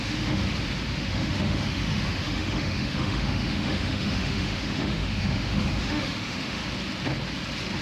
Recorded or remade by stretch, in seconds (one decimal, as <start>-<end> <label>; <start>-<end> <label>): 0.0-0.4 remade; 0.4-1.0 recorded; 1.0-6.6 remade; 6.6-7.8 recorded